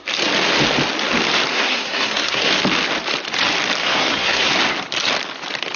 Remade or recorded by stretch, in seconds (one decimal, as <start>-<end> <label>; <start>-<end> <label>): 0.0-1.5 recorded; 1.5-2.5 remade; 2.5-3.8 recorded; 3.8-4.5 remade; 4.5-5.8 recorded